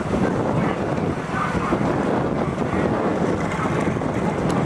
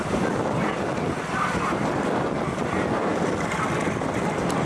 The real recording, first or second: first